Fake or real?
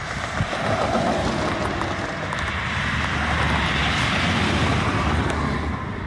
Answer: real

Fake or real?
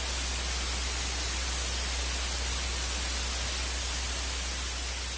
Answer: real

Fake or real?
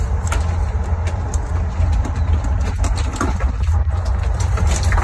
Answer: real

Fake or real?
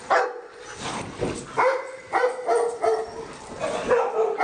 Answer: real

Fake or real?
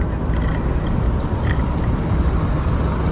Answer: real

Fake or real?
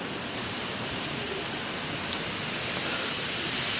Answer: real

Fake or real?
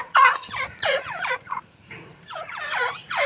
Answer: fake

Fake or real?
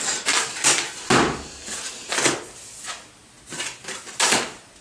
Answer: real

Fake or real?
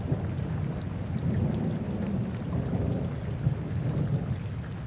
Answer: real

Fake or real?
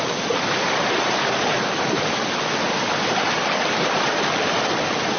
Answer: real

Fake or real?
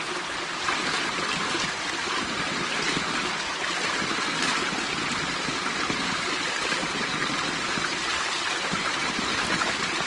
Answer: real